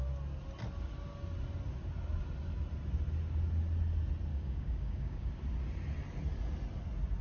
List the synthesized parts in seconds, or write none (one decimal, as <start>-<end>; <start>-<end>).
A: 4.3-5.3